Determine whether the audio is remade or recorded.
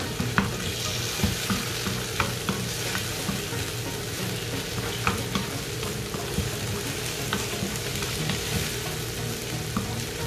recorded